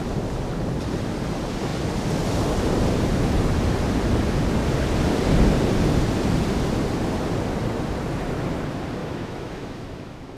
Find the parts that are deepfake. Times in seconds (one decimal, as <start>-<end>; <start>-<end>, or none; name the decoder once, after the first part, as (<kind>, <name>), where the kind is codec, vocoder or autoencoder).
9.0-10.4 (autoencoder, DAC-VAE)